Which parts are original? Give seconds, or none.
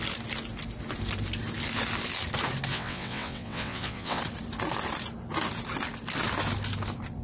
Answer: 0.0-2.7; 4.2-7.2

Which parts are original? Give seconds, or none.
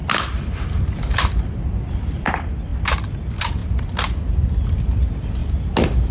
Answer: 0.0-6.1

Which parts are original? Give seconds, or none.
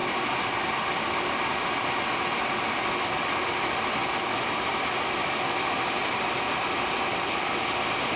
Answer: 0.0-4.0; 7.0-8.2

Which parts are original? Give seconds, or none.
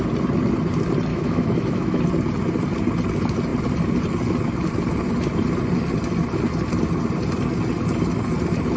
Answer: 0.0-1.1; 2.0-8.8